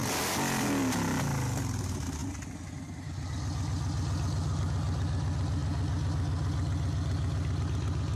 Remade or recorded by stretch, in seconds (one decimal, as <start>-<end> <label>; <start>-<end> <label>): 0.0-8.2 recorded

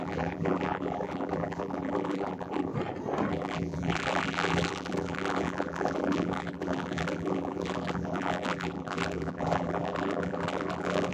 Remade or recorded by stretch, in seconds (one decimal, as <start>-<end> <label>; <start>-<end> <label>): 0.0-2.7 remade; 2.7-3.3 recorded; 3.3-11.1 remade

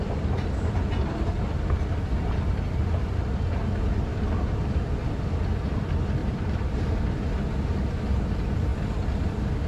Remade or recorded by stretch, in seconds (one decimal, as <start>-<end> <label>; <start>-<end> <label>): 0.0-6.2 recorded; 6.2-6.8 remade; 6.8-9.7 recorded

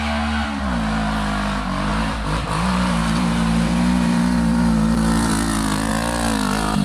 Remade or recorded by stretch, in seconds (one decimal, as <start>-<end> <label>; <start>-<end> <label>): 0.0-1.9 recorded; 1.9-5.9 remade; 5.9-6.8 recorded

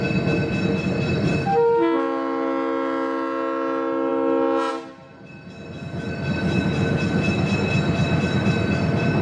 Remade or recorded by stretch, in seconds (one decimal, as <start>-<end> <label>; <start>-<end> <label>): 0.0-9.2 recorded

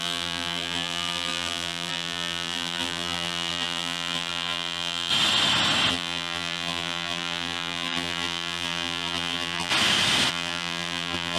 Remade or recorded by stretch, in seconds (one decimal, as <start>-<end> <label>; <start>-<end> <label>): 0.0-5.1 remade; 5.1-5.9 recorded; 5.9-9.7 remade; 9.7-10.3 recorded; 10.3-11.4 remade

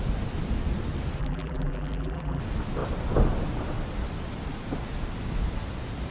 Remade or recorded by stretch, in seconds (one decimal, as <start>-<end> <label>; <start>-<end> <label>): 0.0-1.2 recorded; 1.2-2.4 remade; 2.4-6.1 recorded

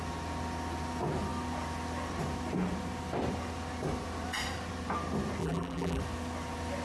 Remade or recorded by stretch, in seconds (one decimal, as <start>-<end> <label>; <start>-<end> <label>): 0.0-5.4 recorded; 5.4-6.0 remade; 6.0-6.8 recorded